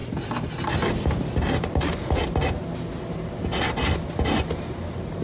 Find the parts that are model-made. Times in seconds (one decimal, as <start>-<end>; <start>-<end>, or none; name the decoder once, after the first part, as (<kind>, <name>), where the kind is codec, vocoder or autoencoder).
none